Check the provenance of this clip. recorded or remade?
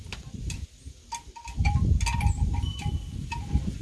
recorded